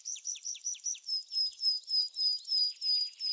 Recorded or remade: remade